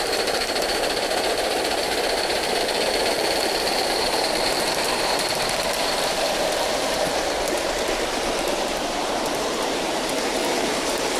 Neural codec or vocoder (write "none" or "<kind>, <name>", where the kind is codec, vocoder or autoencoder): vocoder, BigVGAN v2